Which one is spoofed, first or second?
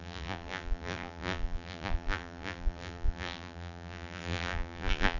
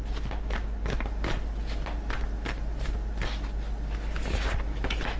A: first